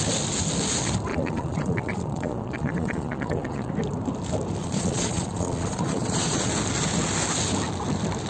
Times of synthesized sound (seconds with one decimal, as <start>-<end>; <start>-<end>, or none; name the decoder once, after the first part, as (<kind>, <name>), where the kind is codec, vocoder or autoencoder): 1.1-3.7 (vocoder, Vocos); 4.6-6.5